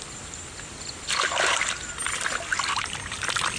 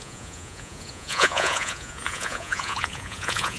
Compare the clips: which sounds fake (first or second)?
second